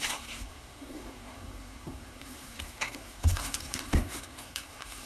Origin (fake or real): fake